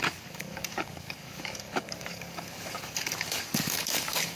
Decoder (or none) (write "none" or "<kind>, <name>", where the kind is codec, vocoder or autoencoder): codec, DAC